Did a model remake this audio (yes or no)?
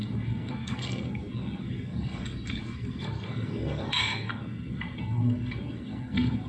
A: yes